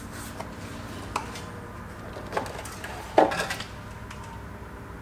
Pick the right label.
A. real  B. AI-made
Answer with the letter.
A